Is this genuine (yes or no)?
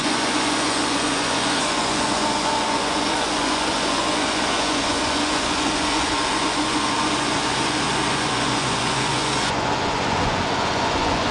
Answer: no